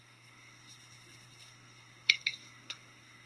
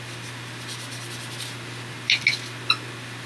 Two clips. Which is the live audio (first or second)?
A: second